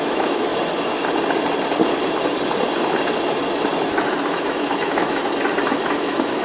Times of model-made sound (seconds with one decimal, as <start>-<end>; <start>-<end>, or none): 0.0-0.5; 4.3-5.2; 5.7-6.4

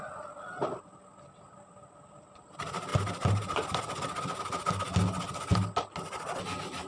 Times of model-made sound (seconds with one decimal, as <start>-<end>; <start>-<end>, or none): none

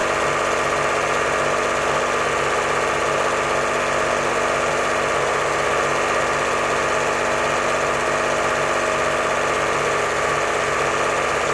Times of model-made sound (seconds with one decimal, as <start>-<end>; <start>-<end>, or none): none

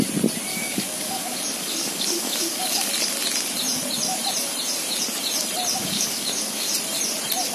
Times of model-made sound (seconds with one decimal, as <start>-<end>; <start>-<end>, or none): 0.5-2.9; 5.8-6.7

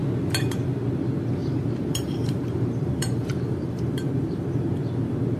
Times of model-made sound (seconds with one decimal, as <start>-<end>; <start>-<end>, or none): 1.4-4.6

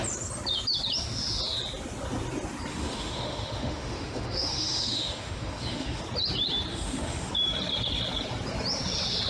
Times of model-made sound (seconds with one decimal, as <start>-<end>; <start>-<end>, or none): 2.7-6.0; 6.7-7.3

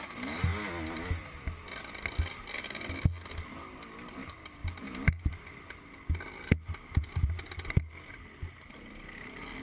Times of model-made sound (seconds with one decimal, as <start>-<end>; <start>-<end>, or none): none